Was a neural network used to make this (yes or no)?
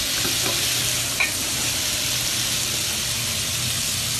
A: no